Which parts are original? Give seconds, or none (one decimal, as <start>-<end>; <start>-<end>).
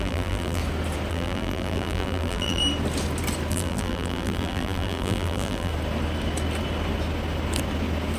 0.6-1.1; 2.6-3.5; 5.7-8.2